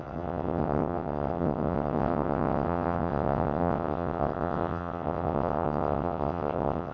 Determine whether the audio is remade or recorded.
remade